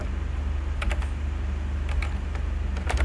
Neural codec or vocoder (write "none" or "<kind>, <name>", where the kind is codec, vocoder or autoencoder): none